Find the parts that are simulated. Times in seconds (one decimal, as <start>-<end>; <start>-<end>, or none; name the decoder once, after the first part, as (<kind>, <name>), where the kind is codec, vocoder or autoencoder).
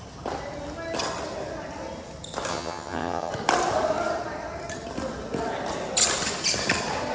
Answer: 2.5-3.3 (vocoder, HiFi-GAN)